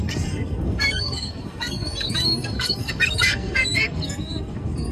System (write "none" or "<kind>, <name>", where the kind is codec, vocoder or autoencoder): codec, SNAC